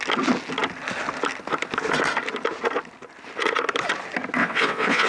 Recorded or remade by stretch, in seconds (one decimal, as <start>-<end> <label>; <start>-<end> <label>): 0.0-4.4 recorded; 4.4-5.1 remade